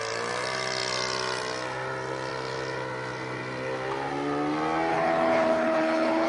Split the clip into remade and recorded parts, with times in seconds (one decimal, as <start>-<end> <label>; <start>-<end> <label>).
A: 0.0-4.9 recorded; 4.9-6.3 remade